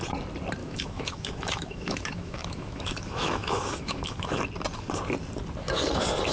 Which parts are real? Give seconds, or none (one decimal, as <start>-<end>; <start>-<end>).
0.0-0.6; 4.4-6.3